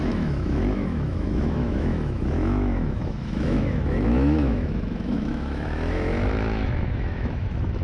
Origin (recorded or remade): remade